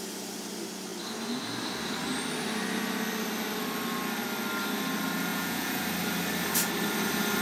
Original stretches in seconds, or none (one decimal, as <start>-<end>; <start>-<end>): 0.0-5.3; 5.8-7.4